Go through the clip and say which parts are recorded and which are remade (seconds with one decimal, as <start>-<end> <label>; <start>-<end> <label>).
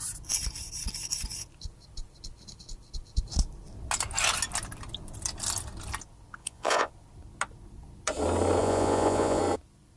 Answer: 0.0-6.4 recorded; 6.4-6.9 remade; 6.9-8.6 recorded; 8.6-9.4 remade; 9.4-10.0 recorded